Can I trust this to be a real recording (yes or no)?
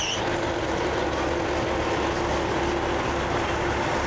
yes